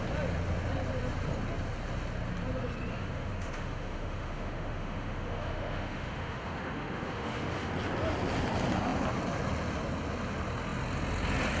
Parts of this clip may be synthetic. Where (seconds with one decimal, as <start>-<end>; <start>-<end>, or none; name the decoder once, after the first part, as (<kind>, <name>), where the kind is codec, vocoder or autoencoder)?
2.9-7.7 (autoencoder, DAC-VAE)